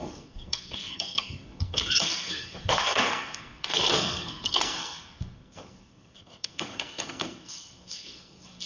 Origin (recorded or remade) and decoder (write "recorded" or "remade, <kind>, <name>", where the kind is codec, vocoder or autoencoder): remade, codec, SNAC